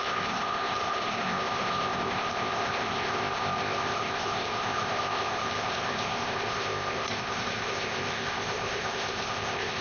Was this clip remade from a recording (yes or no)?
yes